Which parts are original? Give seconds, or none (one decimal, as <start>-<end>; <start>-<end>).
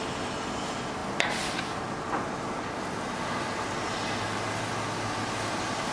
0.0-5.9